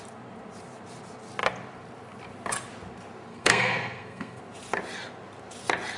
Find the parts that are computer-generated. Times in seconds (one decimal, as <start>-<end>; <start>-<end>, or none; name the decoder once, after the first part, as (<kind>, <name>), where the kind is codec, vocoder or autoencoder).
3.3-4.4 (codec, SNAC)